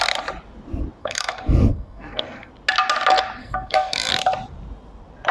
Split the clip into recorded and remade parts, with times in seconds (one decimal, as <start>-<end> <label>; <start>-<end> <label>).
0.0-1.0 recorded; 1.0-2.5 remade; 2.5-3.4 recorded; 3.4-4.1 remade; 4.1-5.3 recorded